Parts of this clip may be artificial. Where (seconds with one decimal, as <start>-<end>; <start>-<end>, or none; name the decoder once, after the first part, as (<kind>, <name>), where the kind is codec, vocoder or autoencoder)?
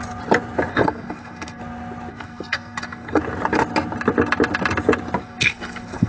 0.7-1.6 (codec, SNAC); 2.1-3.2; 5.2-6.1